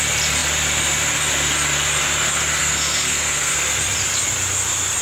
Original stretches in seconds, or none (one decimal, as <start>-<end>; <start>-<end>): 0.0-2.6; 3.5-5.0